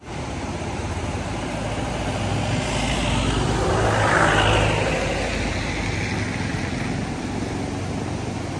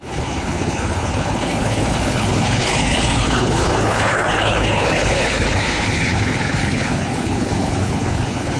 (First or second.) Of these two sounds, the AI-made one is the second